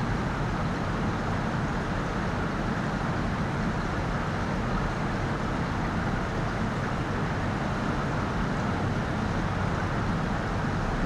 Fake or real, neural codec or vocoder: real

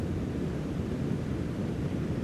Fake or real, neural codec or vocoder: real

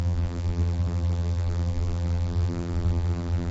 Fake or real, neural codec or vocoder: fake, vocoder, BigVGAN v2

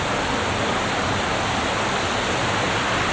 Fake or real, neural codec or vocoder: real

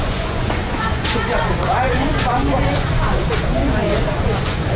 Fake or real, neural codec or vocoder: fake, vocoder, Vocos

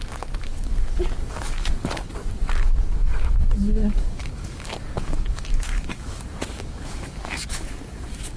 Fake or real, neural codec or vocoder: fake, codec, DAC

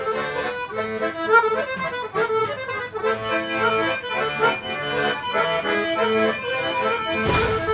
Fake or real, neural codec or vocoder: real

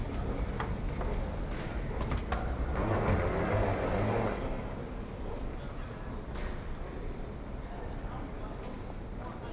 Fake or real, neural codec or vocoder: real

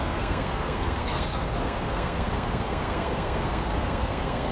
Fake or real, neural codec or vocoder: fake, codec, SNAC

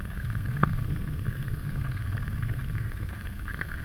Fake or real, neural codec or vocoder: fake, codec, SNAC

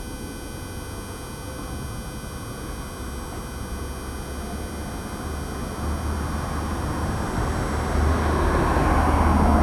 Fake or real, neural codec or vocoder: real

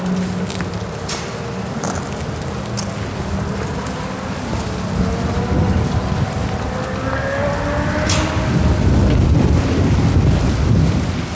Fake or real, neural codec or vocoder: real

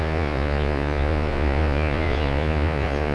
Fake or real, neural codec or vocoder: fake, vocoder, Vocos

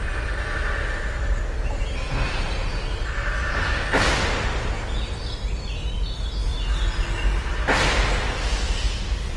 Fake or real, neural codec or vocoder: real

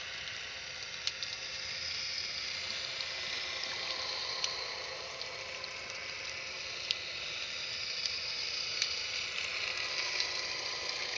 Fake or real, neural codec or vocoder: real